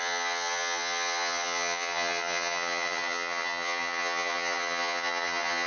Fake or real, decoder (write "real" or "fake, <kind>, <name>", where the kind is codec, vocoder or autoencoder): fake, vocoder, HiFi-GAN